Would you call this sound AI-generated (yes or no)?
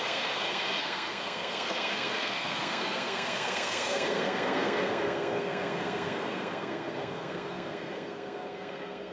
yes